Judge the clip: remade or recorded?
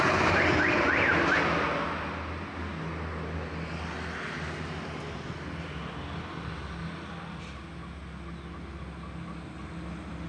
recorded